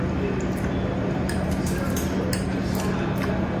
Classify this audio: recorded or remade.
recorded